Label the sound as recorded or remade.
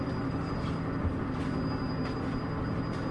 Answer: recorded